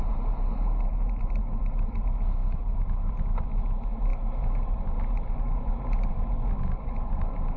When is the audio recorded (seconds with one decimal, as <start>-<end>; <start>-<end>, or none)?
0.0-7.6